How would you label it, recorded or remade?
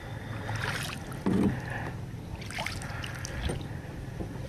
recorded